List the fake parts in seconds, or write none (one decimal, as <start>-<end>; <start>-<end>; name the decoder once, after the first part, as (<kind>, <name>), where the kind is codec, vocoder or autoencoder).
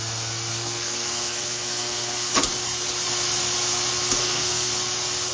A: 0.5-2.3 (codec, SNAC); 4.2-4.7